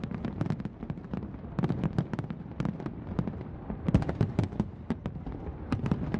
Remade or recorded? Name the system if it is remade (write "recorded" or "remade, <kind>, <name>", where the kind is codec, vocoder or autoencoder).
remade, vocoder, BigVGAN v2